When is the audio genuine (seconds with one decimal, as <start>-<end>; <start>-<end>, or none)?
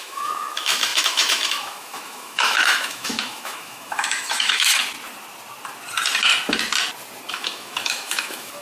4.8-7.3